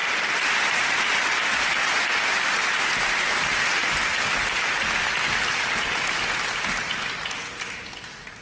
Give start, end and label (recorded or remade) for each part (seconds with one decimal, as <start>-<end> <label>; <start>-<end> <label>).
0.0-0.7 remade; 0.7-8.4 recorded